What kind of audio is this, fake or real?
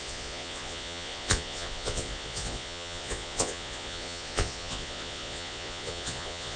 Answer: fake